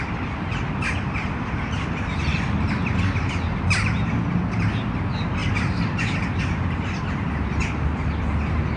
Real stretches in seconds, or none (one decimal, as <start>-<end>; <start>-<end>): 0.0-8.8